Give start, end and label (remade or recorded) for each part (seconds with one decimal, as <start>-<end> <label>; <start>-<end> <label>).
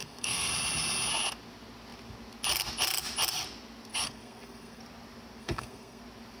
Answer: 0.0-0.5 remade; 0.5-3.9 recorded; 3.9-4.8 remade; 4.8-5.4 recorded; 5.4-6.0 remade; 6.0-6.4 recorded